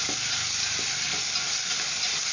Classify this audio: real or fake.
real